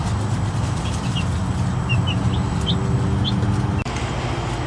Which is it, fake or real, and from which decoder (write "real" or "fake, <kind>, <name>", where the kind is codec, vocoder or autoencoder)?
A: real